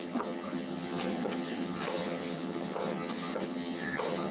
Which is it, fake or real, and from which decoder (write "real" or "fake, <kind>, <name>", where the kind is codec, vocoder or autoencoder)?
fake, vocoder, HiFi-GAN